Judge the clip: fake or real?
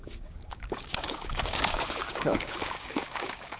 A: fake